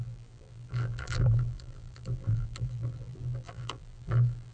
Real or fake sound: fake